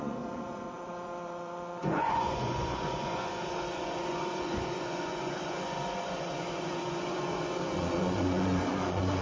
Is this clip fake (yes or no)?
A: yes